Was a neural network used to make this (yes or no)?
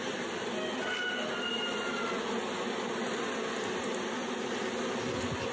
no